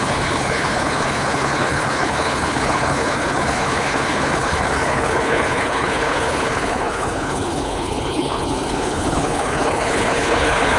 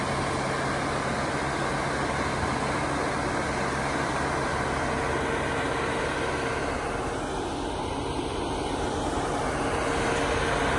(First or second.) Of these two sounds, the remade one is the first